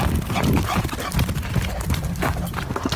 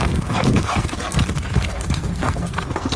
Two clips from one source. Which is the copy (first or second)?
second